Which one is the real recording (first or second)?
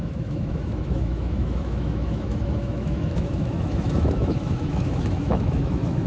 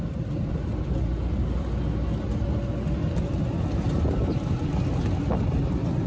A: second